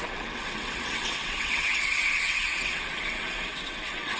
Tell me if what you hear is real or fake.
fake